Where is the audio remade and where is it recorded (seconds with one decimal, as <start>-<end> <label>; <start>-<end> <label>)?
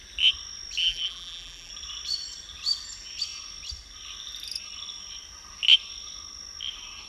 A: 0.0-0.8 recorded; 0.8-1.7 remade; 1.7-7.1 recorded